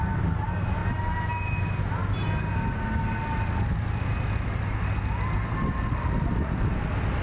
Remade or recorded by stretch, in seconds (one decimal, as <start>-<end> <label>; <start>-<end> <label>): 0.0-7.2 recorded